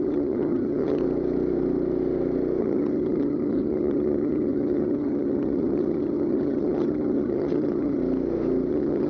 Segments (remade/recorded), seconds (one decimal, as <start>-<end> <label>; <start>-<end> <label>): 0.0-1.0 remade; 1.0-2.6 recorded; 2.6-8.0 remade; 8.0-8.7 recorded; 8.7-9.1 remade